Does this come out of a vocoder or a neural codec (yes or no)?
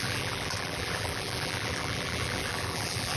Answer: yes